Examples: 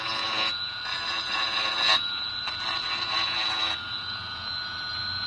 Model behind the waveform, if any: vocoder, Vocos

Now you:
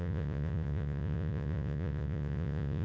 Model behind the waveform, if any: vocoder, Vocos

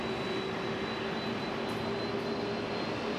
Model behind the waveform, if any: none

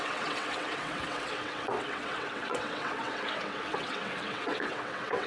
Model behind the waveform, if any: vocoder, WaveNeXt